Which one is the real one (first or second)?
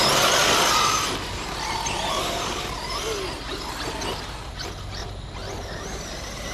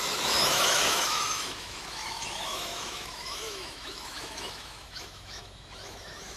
first